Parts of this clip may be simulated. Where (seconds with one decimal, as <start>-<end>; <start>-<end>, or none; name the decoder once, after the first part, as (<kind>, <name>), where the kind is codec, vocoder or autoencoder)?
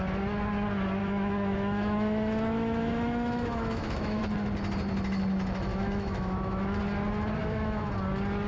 1.0-4.2 (autoencoder, DAC-VAE); 5.7-6.8; 7.4-7.9